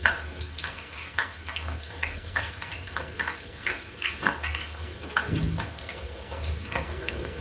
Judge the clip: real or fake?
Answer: fake